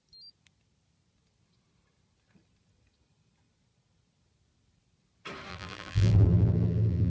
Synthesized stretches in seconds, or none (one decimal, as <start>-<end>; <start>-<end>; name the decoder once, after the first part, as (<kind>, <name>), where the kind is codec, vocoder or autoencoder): 5.5-7.1 (vocoder, BigVGAN v2)